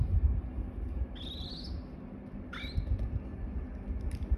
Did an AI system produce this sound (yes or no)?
no